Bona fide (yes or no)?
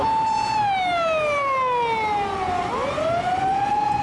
yes